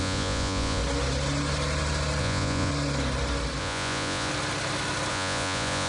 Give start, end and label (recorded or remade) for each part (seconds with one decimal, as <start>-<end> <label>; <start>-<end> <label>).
0.0-0.8 remade; 0.8-2.2 recorded; 2.2-2.7 remade; 2.7-3.6 recorded; 3.6-4.3 remade; 4.3-5.1 recorded; 5.1-5.9 remade